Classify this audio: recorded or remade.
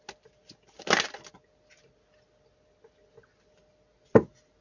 recorded